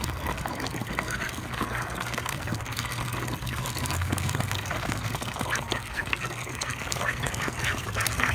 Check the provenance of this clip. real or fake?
fake